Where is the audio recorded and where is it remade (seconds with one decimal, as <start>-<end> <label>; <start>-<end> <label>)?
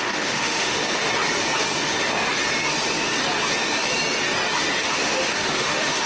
0.0-1.1 remade; 1.1-4.8 recorded; 4.8-6.1 remade